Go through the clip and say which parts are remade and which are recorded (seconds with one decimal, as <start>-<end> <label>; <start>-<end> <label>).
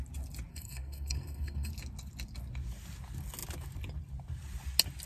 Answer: 0.0-0.5 recorded; 0.5-1.7 remade; 1.7-5.1 recorded